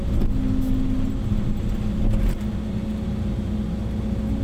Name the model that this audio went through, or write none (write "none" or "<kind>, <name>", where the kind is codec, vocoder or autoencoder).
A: none